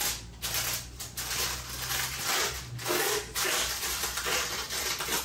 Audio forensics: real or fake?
real